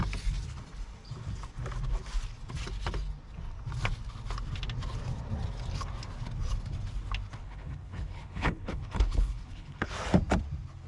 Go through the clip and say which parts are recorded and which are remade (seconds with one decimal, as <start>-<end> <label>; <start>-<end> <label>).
0.0-7.4 recorded; 7.4-9.9 remade; 9.9-10.9 recorded